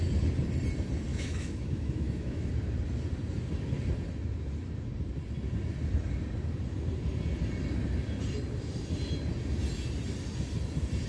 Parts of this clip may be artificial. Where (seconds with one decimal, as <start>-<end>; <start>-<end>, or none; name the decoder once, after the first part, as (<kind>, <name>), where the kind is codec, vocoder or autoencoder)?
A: 1.1-2.5 (autoencoder, DAC-VAE)